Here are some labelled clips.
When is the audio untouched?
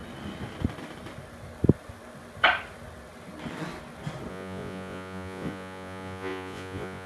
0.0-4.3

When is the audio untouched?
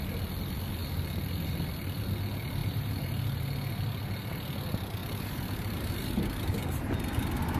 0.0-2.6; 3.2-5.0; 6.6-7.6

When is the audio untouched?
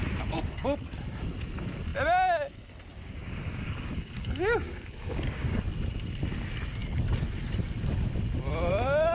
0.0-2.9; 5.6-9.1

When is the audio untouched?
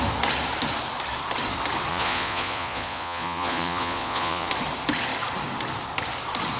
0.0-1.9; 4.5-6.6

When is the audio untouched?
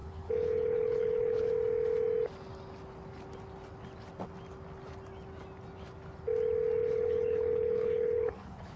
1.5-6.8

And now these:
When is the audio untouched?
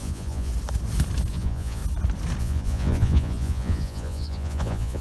0.5-1.3; 1.8-2.4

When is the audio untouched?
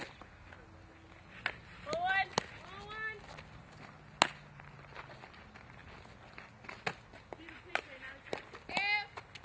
0.0-9.4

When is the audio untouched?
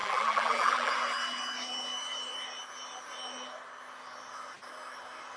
0.9-5.4